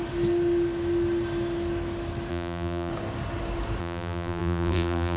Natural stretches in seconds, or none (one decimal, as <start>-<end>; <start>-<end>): 0.0-2.3; 2.9-3.8

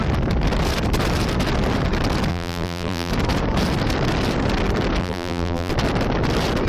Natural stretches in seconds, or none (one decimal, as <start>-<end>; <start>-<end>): 0.0-2.3; 3.1-5.0; 5.7-6.7

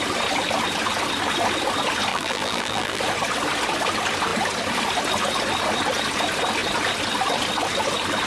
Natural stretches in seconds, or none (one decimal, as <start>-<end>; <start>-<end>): 0.0-2.1; 3.0-8.3

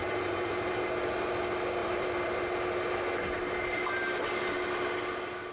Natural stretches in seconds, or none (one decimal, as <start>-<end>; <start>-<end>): 0.9-1.8; 2.5-5.5

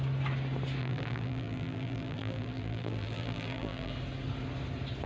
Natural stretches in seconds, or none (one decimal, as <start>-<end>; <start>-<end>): 0.0-0.8; 3.9-5.1